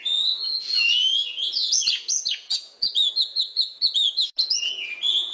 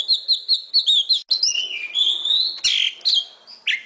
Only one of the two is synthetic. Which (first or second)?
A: first